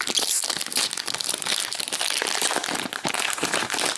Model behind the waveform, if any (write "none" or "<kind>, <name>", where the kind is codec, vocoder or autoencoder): none